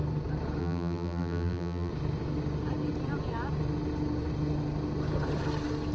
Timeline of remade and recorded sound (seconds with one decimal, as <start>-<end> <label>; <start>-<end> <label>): 0.0-0.6 recorded; 0.6-1.9 remade; 1.9-5.9 recorded